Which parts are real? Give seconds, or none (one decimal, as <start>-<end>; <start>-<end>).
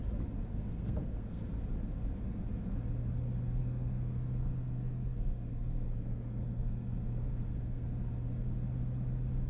0.0-0.5; 1.4-3.6; 8.1-9.5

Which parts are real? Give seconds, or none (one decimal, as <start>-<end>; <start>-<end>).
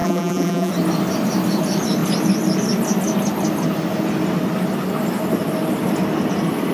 0.7-6.7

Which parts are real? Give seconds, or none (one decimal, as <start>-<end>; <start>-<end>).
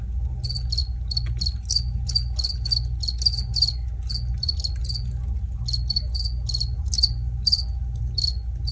0.0-8.7